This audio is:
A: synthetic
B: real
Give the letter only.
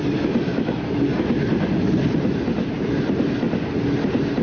B